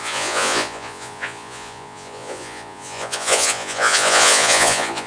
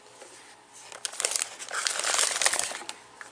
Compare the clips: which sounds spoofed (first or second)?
first